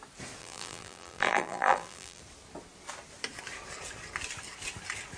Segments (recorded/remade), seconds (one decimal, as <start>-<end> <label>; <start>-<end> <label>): 0.0-0.4 recorded; 0.4-2.2 remade; 2.2-5.2 recorded